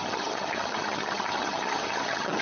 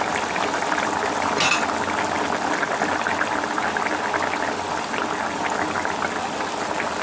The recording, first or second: second